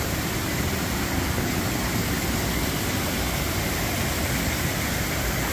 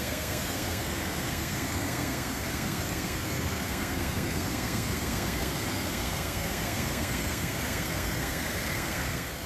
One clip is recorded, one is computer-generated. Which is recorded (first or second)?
first